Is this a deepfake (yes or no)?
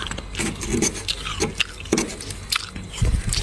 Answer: no